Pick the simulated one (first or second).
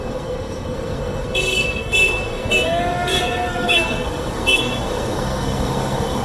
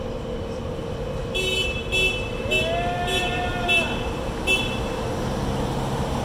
first